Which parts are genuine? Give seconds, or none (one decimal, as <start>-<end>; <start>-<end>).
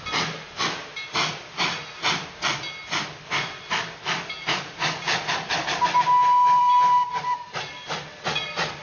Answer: 0.0-8.8